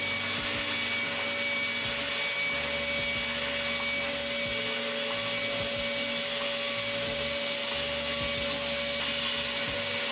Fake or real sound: real